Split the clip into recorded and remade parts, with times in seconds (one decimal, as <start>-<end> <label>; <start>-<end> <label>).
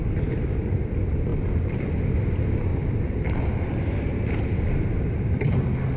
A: 0.0-1.3 remade; 1.3-1.9 recorded; 1.9-2.7 remade; 2.7-3.5 recorded; 3.5-6.0 remade